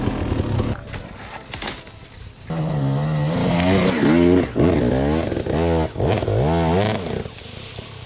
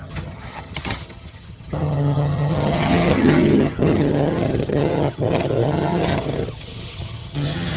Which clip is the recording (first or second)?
first